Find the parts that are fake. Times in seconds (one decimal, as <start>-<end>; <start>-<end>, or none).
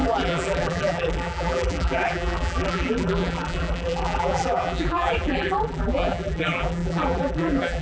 0.0-7.8